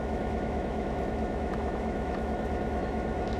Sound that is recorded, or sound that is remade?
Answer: remade